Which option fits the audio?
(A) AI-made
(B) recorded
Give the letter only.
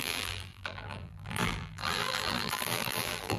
A